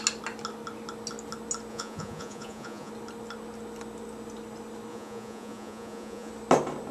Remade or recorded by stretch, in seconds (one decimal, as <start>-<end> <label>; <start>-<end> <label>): 0.0-1.7 recorded; 1.7-2.9 remade; 2.9-4.9 recorded; 4.9-6.3 remade; 6.3-6.9 recorded